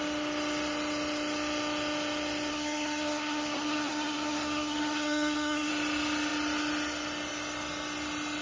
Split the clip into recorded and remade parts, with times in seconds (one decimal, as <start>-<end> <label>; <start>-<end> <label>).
0.0-2.5 recorded; 2.5-5.7 remade; 5.7-8.4 recorded